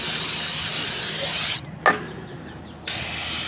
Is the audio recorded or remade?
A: recorded